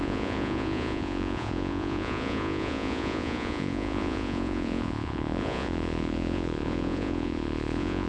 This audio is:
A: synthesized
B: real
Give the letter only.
A